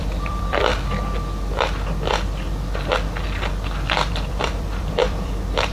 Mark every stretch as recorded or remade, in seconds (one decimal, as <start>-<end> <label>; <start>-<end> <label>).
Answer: 0.0-0.7 remade; 0.7-4.1 recorded; 4.1-5.7 remade